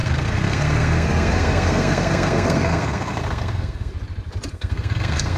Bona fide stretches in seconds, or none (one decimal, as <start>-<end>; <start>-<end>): 3.9-4.5